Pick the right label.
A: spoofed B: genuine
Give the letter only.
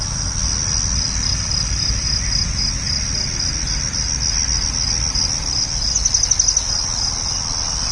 B